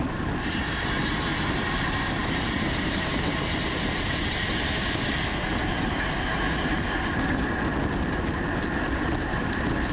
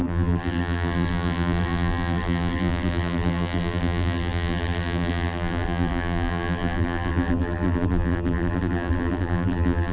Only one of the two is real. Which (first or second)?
first